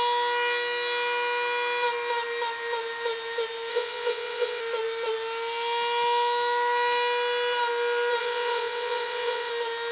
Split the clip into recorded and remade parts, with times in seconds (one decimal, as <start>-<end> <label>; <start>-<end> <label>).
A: 0.0-3.7 recorded; 3.7-4.6 remade; 4.6-8.2 recorded; 8.2-9.5 remade; 9.5-9.9 recorded